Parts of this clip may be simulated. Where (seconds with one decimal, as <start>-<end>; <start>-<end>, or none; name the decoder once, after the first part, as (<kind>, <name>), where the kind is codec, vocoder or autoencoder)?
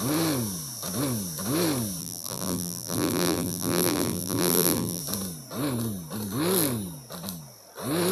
2.0-5.0 (vocoder, BigVGAN v2)